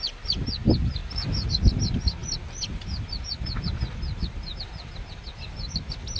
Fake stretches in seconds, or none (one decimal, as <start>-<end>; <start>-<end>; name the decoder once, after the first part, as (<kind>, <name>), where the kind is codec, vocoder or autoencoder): none